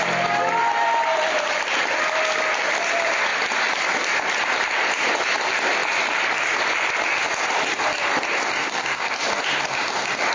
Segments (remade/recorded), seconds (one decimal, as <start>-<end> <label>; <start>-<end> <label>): 0.0-8.6 recorded; 8.6-9.1 remade; 9.1-10.3 recorded